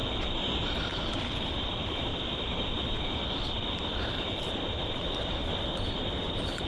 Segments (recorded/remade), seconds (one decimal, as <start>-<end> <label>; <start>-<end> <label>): 0.0-1.1 recorded; 1.1-2.1 remade; 2.1-2.6 recorded; 2.6-3.2 remade; 3.2-4.2 recorded; 4.2-5.4 remade; 5.4-6.1 recorded; 6.1-6.7 remade